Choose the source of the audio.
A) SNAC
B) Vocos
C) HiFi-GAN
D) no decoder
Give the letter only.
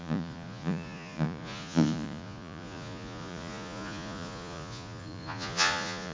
B